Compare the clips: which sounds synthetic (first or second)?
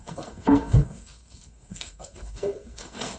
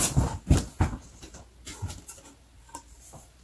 first